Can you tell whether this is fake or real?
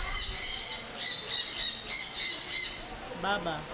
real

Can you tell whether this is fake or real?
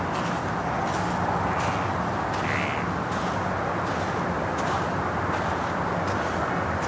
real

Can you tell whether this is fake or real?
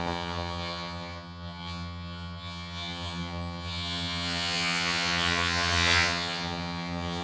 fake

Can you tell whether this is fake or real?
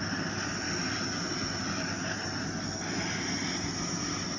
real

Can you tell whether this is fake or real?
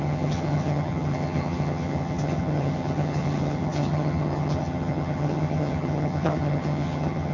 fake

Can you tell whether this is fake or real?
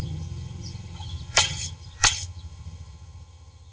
fake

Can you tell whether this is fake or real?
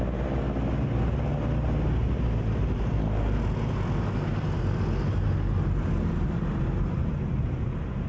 real